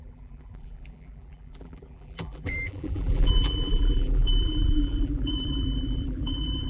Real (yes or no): no